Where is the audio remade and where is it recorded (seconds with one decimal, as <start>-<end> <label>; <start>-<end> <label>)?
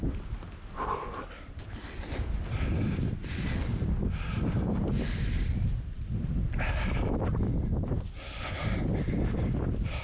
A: 0.0-10.0 recorded